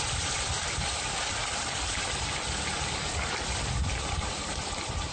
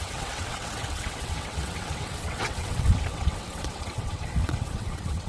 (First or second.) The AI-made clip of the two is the second